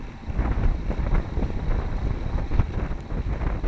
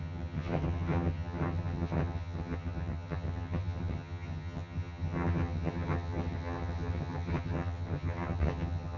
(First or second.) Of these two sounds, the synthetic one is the second